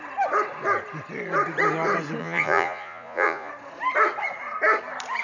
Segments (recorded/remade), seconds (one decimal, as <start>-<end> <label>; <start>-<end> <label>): 0.0-2.2 recorded; 2.2-3.5 remade; 3.5-5.2 recorded